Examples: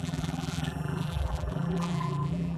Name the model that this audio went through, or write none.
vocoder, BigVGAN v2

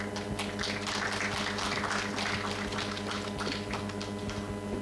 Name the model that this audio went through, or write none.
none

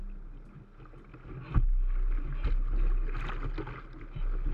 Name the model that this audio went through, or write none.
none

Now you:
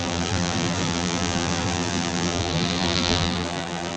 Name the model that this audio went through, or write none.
vocoder, BigVGAN v2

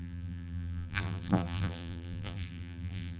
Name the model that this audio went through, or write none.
vocoder, BigVGAN v2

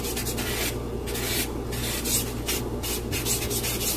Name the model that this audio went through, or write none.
none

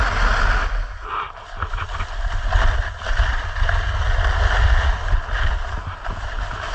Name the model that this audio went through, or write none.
none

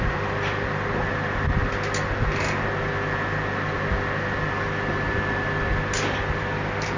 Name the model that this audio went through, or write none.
none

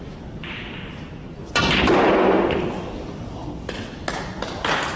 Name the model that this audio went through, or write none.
none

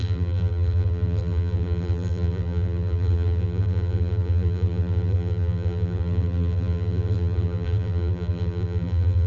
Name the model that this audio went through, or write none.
vocoder, BigVGAN v2